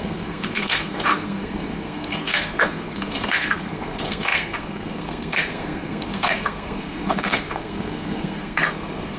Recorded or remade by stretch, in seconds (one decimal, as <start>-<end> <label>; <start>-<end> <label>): 0.0-9.2 remade